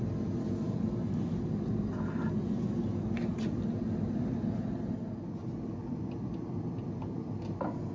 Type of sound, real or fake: real